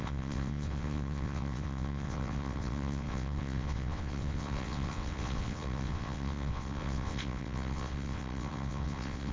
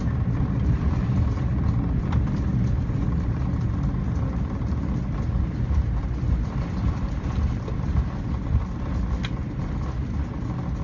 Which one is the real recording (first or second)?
second